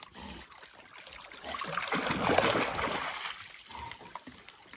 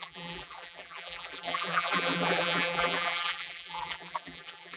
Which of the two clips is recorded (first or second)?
first